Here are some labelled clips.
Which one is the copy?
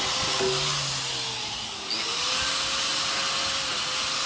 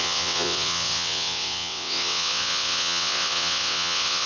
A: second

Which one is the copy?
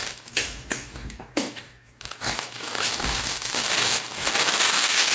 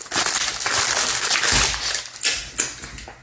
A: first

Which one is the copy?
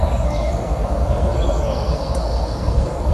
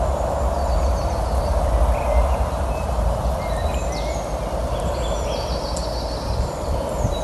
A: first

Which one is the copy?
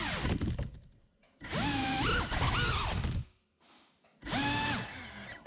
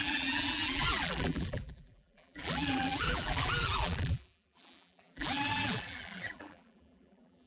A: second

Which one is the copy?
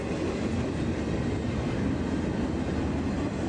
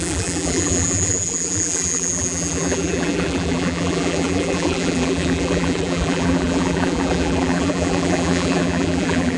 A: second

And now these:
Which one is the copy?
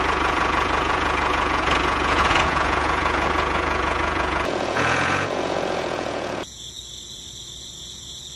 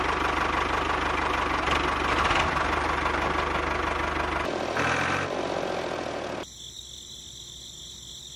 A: first